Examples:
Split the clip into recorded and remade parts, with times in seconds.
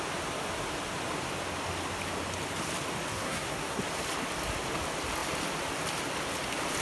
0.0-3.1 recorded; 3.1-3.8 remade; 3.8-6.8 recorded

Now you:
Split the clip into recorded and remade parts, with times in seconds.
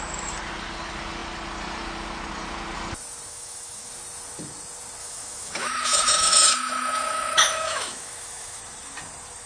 0.0-3.3 recorded; 3.3-3.9 remade; 3.9-5.0 recorded; 5.0-8.6 remade; 8.6-9.5 recorded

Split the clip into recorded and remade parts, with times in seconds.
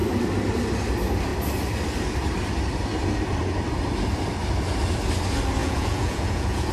0.0-5.6 recorded; 5.6-6.7 remade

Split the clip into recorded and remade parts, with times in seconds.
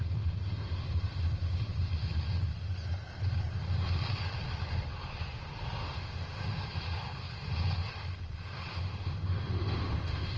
0.0-5.8 recorded; 5.8-6.5 remade; 6.5-8.7 recorded; 8.7-10.4 remade